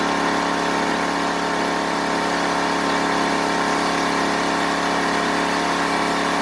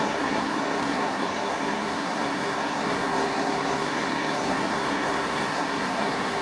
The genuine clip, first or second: first